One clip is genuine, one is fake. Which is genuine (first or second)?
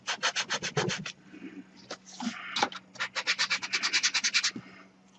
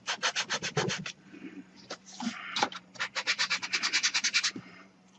first